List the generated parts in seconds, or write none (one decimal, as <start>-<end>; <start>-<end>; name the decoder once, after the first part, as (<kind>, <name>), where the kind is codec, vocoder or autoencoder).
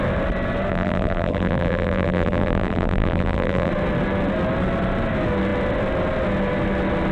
0.7-3.7 (vocoder, BigVGAN v2)